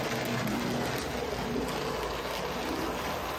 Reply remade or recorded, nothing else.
recorded